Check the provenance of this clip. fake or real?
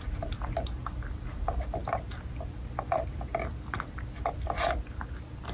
real